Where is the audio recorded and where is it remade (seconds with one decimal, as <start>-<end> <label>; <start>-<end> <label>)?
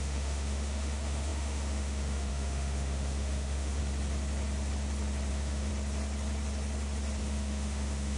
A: 0.0-3.8 remade; 3.8-5.3 recorded; 5.3-5.7 remade; 5.7-7.2 recorded; 7.2-8.2 remade